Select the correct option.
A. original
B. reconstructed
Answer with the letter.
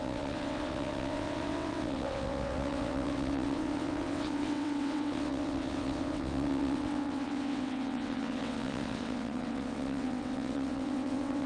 B